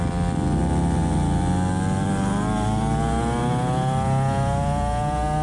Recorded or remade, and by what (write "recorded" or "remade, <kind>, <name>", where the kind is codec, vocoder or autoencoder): recorded